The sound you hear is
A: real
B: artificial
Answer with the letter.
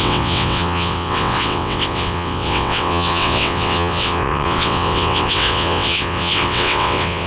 B